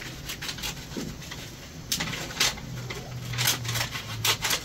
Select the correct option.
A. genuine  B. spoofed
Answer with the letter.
A